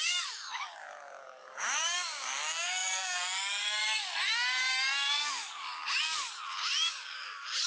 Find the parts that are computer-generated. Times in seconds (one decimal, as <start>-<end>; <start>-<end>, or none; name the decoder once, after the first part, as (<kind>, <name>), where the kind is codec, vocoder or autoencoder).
0.0-7.7 (codec, DAC)